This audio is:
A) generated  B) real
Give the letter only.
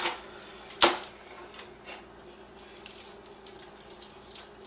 B